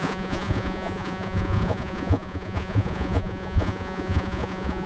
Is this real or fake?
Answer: fake